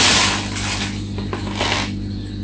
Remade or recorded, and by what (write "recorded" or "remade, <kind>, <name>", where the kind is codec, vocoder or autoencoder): recorded